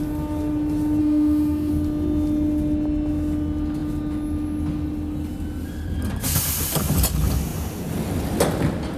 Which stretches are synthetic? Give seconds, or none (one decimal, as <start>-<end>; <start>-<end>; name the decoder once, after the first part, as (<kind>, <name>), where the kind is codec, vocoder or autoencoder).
1.0-1.7 (autoencoder, DAC-VAE)